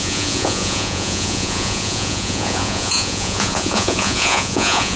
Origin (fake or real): fake